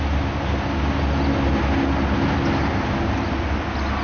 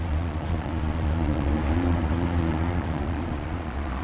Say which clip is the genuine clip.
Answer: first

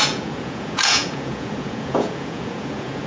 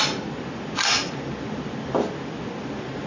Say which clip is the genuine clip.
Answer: second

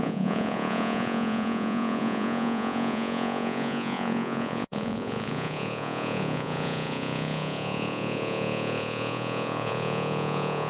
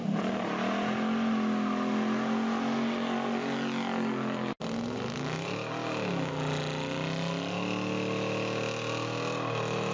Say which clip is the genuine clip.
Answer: second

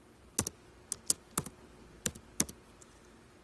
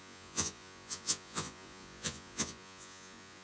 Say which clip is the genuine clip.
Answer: first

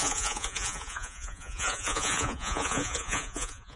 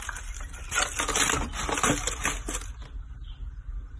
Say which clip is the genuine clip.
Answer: second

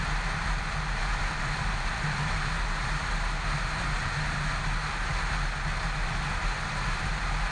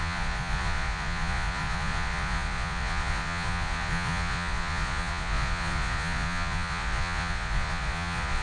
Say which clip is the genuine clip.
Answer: first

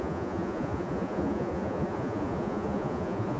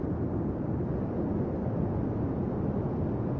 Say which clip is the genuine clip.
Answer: second